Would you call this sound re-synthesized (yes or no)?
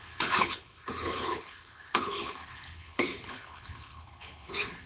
yes